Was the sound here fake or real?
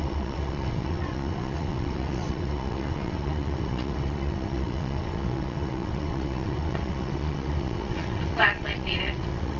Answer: fake